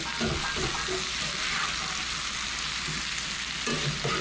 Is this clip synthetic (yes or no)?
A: no